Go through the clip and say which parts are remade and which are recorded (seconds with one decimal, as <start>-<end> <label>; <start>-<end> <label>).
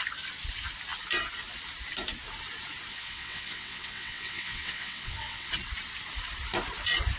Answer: 0.0-2.9 recorded; 2.9-5.5 remade; 5.5-7.2 recorded